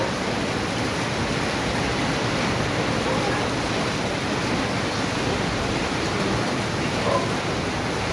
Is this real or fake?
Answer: real